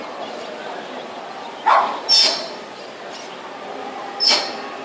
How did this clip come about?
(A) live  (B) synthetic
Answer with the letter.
A